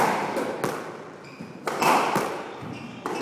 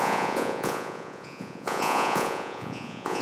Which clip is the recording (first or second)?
first